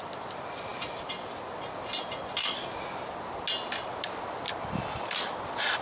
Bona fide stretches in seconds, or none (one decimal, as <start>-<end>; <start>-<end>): 0.0-5.8